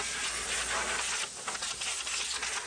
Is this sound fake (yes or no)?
no